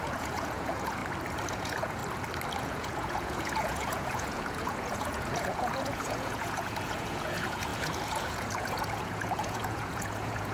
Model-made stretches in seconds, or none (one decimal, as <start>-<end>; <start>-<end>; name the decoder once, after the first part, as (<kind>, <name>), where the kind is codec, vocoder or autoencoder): 0.0-1.0 (vocoder, Vocos); 1.5-2.0; 2.6-10.5